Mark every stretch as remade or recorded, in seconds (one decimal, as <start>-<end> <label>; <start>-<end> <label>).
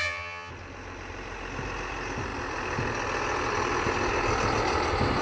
0.0-0.5 remade; 0.5-5.2 recorded